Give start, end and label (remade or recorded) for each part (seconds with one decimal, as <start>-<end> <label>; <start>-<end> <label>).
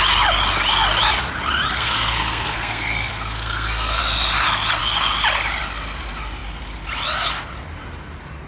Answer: 0.0-1.7 recorded; 1.7-4.0 remade; 4.0-8.5 recorded